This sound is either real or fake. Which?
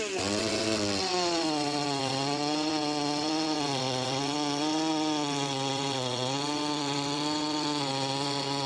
fake